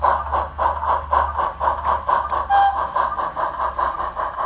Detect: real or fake real